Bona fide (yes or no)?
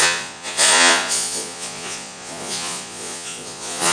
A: no